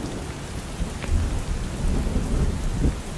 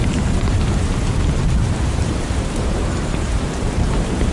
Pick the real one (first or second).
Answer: first